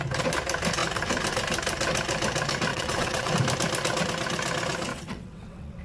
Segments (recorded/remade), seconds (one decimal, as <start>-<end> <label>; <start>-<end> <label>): 0.0-2.7 recorded; 2.7-3.3 remade; 3.3-4.9 recorded; 4.9-5.8 remade